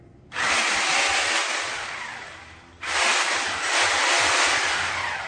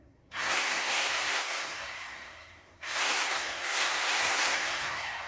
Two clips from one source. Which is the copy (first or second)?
second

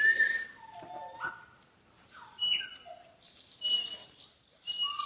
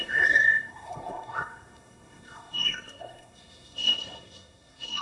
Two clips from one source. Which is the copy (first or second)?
second